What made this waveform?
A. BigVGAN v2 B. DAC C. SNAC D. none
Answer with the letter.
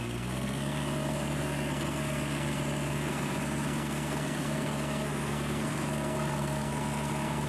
C